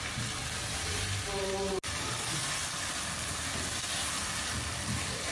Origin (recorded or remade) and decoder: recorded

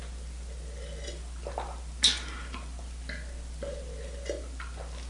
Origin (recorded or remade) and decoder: recorded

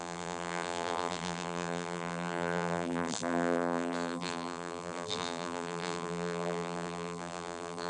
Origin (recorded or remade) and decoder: remade, vocoder, BigVGAN v2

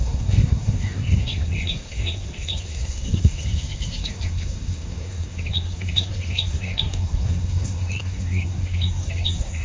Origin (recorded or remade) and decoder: remade, codec, SNAC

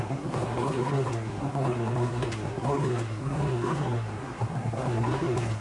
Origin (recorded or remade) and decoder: remade, codec, SNAC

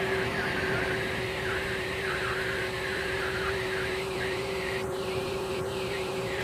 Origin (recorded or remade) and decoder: remade, vocoder, BigVGAN v2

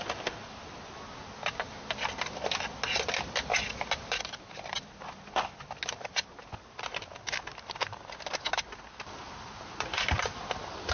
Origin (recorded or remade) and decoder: recorded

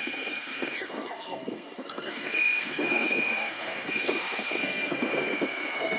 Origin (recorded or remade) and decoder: remade, codec, SNAC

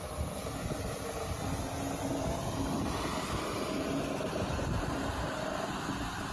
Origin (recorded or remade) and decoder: recorded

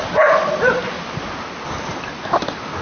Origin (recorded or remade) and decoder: recorded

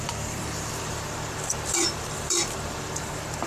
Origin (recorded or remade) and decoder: remade, vocoder, BigVGAN v2